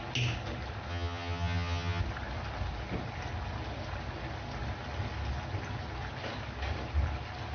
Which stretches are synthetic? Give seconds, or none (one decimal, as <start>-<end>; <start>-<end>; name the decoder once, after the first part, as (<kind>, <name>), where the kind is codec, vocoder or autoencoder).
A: 0.9-2.0 (vocoder, HiFi-GAN)